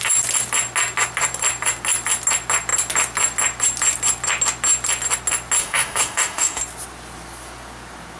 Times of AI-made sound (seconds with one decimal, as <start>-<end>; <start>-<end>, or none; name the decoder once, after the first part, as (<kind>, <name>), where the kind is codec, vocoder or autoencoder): 5.6-6.6 (autoencoder, DAC-VAE)